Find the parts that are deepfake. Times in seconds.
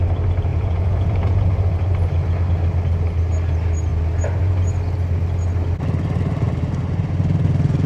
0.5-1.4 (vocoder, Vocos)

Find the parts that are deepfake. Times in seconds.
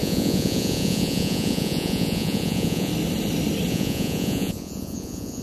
0.0-2.9 (vocoder, Vocos); 3.7-5.4